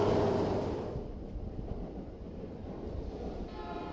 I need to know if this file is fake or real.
real